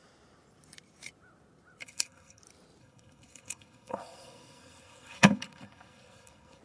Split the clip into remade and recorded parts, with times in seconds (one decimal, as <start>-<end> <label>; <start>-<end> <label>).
0.0-1.8 recorded; 1.8-2.4 remade; 2.4-2.8 recorded; 2.8-6.6 remade